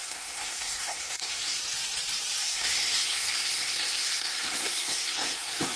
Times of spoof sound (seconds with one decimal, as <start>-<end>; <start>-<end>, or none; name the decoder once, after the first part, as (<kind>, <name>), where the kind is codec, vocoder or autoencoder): 0.0-1.6 (codec, SNAC); 2.4-5.8